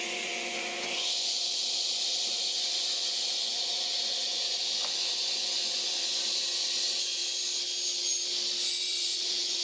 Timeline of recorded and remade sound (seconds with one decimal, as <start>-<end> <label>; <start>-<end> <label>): 0.0-7.2 remade; 7.2-8.8 recorded; 8.8-9.6 remade